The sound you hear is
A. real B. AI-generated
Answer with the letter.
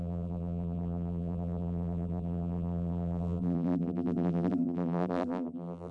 B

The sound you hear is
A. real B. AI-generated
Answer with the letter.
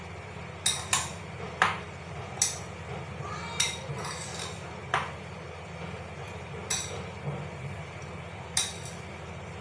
A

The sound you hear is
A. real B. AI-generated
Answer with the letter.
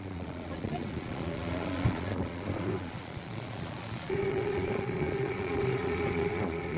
B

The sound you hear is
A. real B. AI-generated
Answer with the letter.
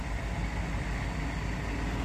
A